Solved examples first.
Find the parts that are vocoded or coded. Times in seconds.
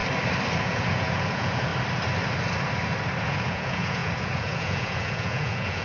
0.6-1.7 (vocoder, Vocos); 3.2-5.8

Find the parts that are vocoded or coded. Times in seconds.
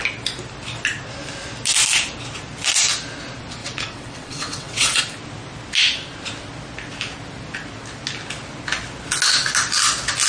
3.6-5.0 (vocoder, WaveNeXt)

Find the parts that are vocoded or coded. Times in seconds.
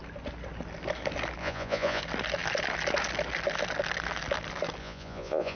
1.4-2.0 (vocoder, Vocos); 4.8-5.6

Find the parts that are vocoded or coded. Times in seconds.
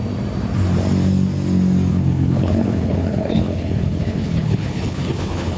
1.9-5.6 (codec, HILCodec)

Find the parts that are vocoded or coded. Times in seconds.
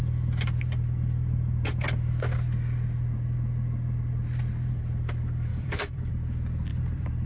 5.5-6.1 (vocoder, BigVGAN v2); 6.7-7.3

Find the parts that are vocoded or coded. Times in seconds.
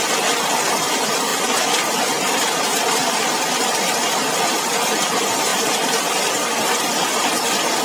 3.0-4.3 (vocoder, BigVGAN v2); 5.5-6.1